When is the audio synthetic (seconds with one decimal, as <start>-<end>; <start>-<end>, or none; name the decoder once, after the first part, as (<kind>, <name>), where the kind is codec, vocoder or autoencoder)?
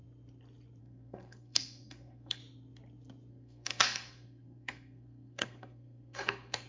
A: 0.8-2.4 (codec, SNAC); 3.3-6.7